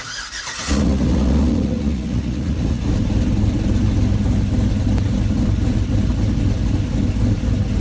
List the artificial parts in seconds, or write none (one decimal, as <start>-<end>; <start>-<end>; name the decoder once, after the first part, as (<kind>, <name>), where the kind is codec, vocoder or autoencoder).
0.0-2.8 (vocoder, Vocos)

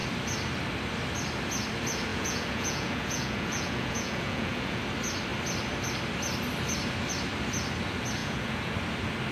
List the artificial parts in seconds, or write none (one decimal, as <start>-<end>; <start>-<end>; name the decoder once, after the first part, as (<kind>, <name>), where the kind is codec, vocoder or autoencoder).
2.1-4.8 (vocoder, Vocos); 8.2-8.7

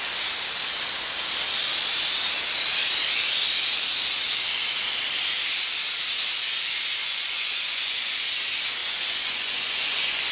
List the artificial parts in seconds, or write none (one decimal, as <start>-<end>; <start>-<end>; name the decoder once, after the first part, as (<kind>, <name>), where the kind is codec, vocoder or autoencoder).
7.0-8.2 (vocoder, Vocos); 8.8-10.3

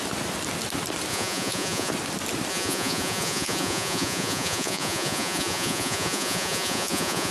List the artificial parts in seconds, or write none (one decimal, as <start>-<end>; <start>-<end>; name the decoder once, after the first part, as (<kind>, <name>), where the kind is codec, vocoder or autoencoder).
1.1-1.9 (vocoder, Vocos); 2.5-7.3

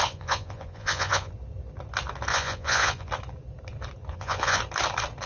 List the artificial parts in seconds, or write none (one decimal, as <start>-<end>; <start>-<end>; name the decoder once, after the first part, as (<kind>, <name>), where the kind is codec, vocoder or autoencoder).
0.0-1.3 (vocoder, Vocos); 2.3-3.1; 4.1-4.6

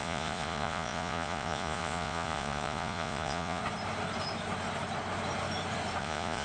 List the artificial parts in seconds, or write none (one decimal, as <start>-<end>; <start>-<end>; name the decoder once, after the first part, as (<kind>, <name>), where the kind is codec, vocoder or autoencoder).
0.0-3.6 (vocoder, Vocos); 6.0-6.4

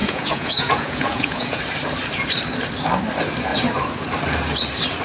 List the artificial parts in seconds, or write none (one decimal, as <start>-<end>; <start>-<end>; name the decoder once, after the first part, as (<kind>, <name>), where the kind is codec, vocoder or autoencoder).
0.0-1.6 (vocoder, Vocos)